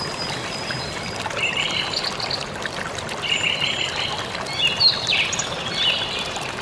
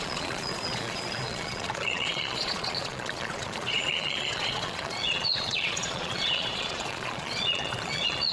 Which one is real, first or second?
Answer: first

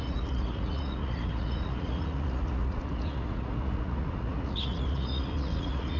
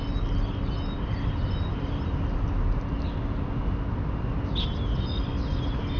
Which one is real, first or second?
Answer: second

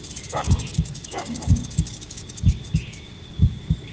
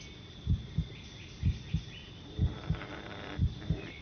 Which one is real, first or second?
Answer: second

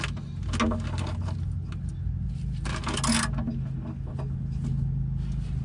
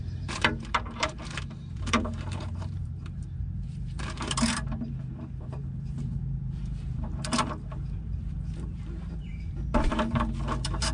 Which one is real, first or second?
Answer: first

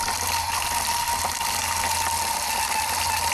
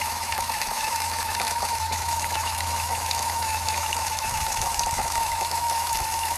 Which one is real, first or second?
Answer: first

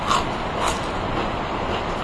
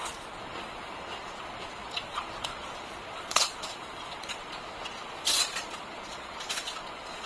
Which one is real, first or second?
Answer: first